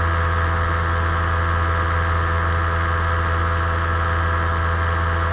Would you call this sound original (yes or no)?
yes